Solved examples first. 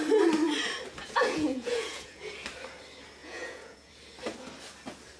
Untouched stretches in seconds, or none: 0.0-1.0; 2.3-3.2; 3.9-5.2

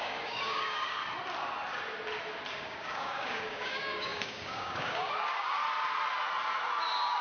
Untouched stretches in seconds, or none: 1.0-2.5; 5.6-6.8

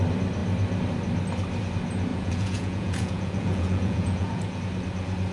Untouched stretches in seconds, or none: 0.0-2.1; 4.6-5.3

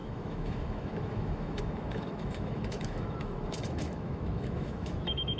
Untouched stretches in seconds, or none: none

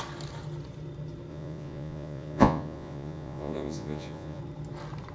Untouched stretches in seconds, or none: 0.0-1.3; 4.4-5.1

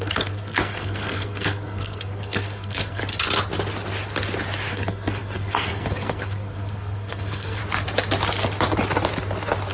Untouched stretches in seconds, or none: 3.0-4.7; 7.6-9.7

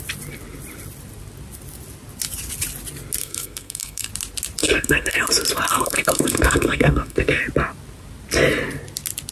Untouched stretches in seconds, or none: 0.0-3.2; 4.1-4.6; 5.2-5.7; 7.4-9.3

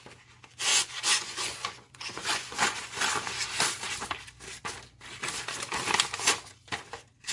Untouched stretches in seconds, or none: 0.0-0.7; 3.1-7.3